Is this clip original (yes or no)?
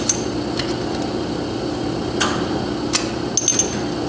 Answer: yes